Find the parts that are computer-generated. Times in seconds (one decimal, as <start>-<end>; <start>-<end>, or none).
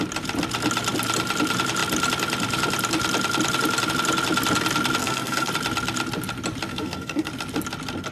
5.0-5.5; 6.7-7.3